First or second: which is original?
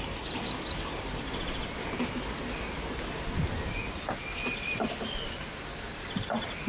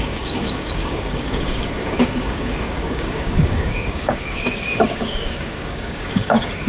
first